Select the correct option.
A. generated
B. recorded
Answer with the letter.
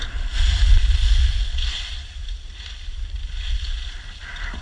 B